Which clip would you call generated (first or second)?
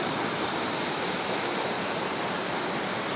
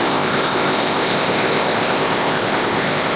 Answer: second